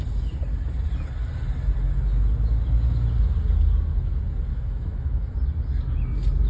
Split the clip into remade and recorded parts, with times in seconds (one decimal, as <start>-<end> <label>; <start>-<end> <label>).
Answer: 0.0-4.5 recorded; 4.5-5.3 remade; 5.3-6.5 recorded